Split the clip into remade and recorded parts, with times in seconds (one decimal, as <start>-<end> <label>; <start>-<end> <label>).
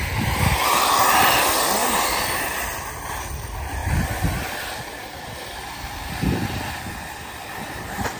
0.0-8.2 recorded